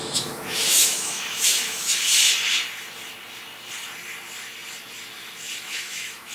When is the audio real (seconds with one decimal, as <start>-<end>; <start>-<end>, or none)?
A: 2.1-5.6